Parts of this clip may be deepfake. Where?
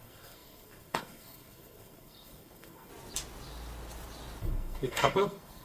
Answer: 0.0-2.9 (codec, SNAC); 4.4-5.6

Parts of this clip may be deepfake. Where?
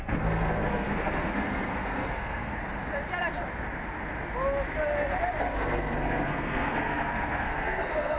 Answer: 0.0-2.6 (codec, SNAC); 5.4-8.2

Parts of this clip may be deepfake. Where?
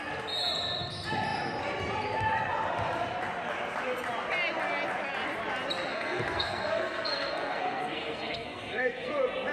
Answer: 5.9-9.1 (codec, SNAC)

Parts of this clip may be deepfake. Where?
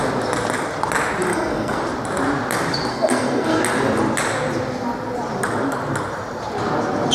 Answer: 1.3-1.8 (codec, SNAC); 2.9-3.6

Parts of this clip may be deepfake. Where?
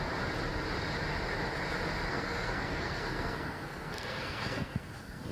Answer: 2.1-5.3 (codec, SNAC)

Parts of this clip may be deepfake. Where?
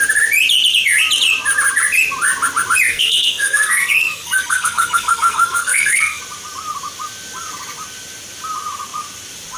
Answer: 2.9-6.2 (codec, SNAC)